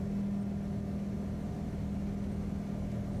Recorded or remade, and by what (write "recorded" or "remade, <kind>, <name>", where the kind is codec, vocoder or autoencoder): recorded